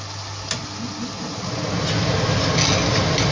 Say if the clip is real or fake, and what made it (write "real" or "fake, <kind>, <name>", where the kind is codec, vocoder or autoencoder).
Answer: real